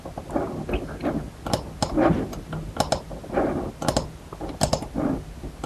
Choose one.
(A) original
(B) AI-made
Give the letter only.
A